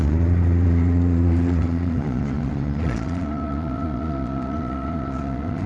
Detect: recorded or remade remade